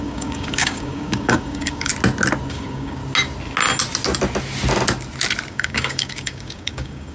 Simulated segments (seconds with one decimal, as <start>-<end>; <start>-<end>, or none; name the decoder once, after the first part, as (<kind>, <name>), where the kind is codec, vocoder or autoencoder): 0.0-1.9 (codec, DAC); 2.5-3.0; 5.5-7.1